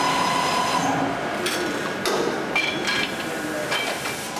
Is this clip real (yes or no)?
yes